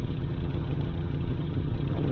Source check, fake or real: fake